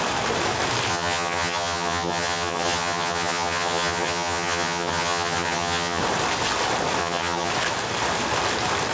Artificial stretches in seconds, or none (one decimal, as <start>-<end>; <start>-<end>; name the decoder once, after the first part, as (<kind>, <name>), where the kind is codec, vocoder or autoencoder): 0.9-6.0 (vocoder, HiFi-GAN); 7.0-7.5